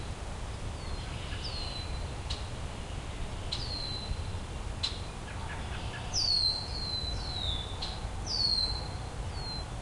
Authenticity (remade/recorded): recorded